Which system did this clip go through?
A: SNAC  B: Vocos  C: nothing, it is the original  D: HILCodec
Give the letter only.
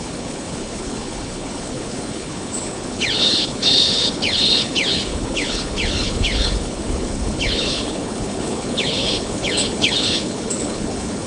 D